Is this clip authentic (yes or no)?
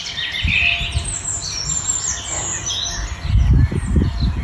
yes